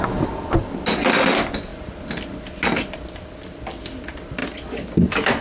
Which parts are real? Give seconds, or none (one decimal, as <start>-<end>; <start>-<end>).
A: 0.0-5.4